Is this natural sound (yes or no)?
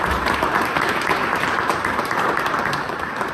no